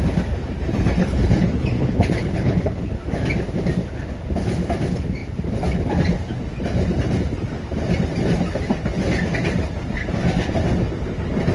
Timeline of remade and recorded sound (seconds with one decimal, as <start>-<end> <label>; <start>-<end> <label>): 0.0-1.0 recorded; 1.0-3.0 remade; 3.0-11.5 recorded

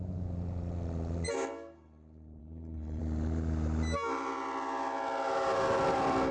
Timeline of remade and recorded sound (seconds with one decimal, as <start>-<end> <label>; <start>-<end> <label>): 0.0-2.4 recorded; 2.4-3.0 remade; 3.0-6.3 recorded

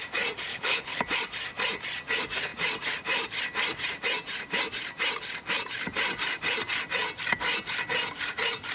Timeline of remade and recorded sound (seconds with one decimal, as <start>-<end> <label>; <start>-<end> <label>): 0.0-0.5 recorded; 0.5-1.0 remade; 1.0-8.7 recorded

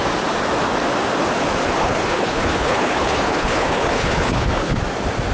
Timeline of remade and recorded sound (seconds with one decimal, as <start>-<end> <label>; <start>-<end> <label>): 0.0-1.8 recorded; 1.8-4.8 remade; 4.8-5.3 recorded

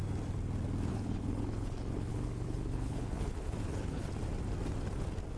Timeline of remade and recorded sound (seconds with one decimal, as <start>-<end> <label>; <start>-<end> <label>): 0.0-0.9 recorded; 0.9-4.1 remade; 4.1-5.4 recorded

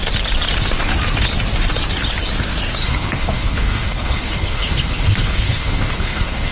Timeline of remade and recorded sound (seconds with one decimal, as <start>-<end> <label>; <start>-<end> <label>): 0.0-2.8 recorded; 2.8-6.5 remade